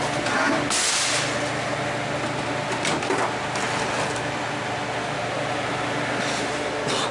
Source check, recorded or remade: recorded